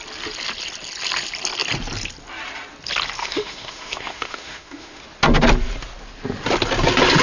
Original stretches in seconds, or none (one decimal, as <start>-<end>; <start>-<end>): 0.0-3.2; 5.0-7.2

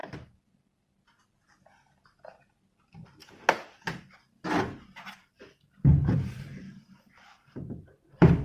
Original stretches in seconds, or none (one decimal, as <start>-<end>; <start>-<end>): 3.2-5.3